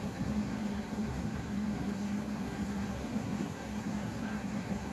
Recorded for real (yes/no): no